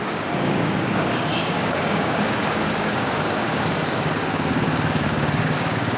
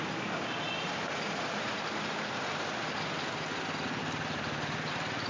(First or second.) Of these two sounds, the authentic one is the second